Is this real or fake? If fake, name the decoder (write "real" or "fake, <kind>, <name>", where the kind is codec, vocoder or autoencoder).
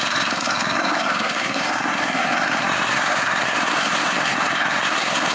fake, codec, SNAC